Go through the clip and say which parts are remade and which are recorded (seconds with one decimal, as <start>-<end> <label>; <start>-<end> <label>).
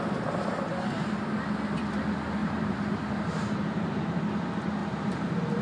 0.0-2.4 recorded; 2.4-4.0 remade; 4.0-4.8 recorded; 4.8-5.6 remade